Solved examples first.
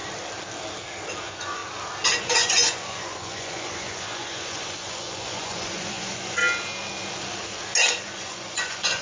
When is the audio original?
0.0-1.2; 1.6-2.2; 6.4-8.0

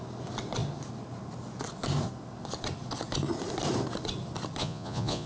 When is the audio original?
0.0-4.6

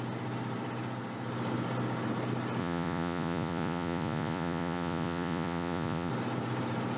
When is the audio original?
0.0-2.6; 6.1-7.0

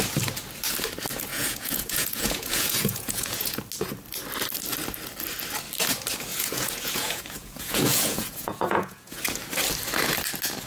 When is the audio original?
0.0-1.3; 3.6-6.3; 9.2-10.7

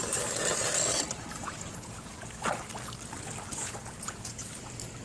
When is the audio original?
0.0-1.4; 2.1-3.5; 4.6-5.0

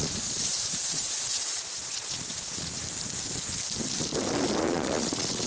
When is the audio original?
2.8-4.6